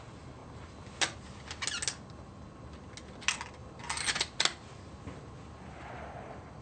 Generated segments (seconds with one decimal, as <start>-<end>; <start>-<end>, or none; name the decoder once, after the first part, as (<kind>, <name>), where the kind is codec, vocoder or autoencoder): none